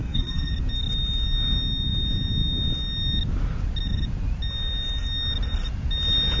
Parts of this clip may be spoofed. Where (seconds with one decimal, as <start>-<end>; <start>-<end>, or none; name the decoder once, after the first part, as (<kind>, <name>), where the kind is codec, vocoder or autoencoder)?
0.0-0.5 (codec, SNAC)